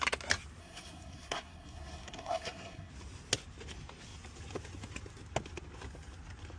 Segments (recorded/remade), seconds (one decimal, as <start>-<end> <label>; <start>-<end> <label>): 0.0-0.6 recorded; 0.6-2.9 remade; 2.9-6.6 recorded

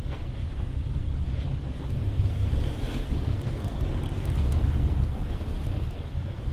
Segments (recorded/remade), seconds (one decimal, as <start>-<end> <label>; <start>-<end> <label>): 0.0-1.1 remade; 1.1-1.9 recorded; 1.9-6.5 remade

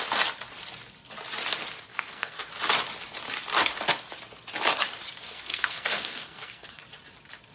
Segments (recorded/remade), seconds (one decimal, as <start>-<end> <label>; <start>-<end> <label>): 0.0-1.9 recorded; 1.9-2.4 remade; 2.4-5.2 recorded; 5.2-6.8 remade; 6.8-7.5 recorded

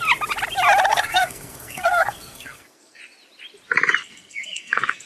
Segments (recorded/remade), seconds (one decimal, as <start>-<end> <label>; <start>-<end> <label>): 0.0-0.9 recorded; 0.9-3.0 remade; 3.0-4.0 recorded; 4.0-5.1 remade

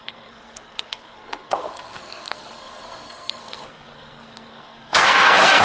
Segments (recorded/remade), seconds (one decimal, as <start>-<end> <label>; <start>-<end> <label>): 0.0-5.6 remade